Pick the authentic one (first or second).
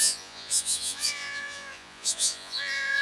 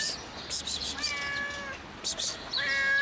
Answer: second